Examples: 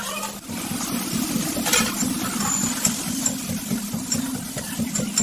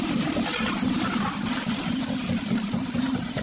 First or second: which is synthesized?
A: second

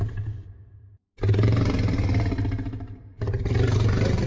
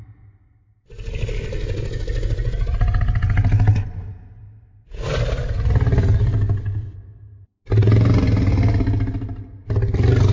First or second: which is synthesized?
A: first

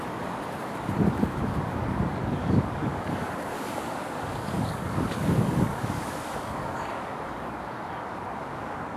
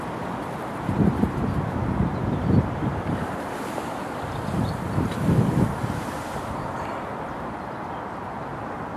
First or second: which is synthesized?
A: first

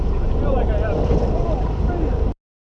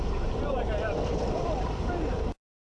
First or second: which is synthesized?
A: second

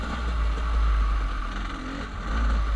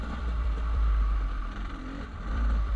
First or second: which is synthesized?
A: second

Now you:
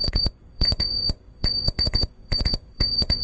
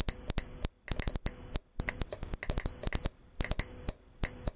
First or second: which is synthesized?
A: first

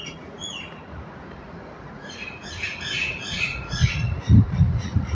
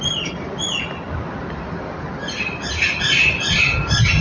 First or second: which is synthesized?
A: first